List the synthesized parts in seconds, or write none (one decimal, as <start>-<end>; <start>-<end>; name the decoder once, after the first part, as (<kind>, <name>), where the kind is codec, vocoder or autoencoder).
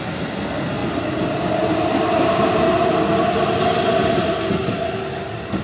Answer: 0.8-2.9 (vocoder, BigVGAN v2)